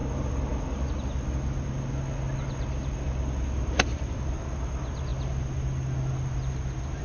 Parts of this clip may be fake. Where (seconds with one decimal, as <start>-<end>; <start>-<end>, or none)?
none